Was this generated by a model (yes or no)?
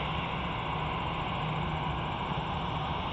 no